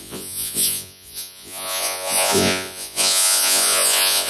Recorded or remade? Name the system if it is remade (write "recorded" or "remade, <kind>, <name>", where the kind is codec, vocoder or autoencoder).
remade, vocoder, Vocos